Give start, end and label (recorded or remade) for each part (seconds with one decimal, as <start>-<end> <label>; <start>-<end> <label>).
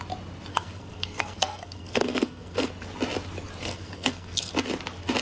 0.0-0.5 recorded; 0.5-2.7 remade; 2.7-3.6 recorded; 3.6-4.5 remade; 4.5-5.2 recorded